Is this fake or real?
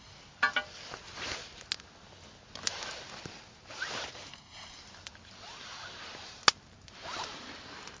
real